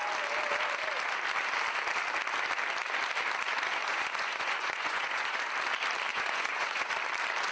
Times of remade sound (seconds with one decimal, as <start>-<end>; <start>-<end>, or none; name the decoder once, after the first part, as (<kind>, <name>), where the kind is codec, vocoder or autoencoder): 3.8-5.5 (vocoder, Vocos); 6.1-6.9